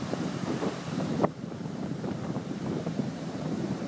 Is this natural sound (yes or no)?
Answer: no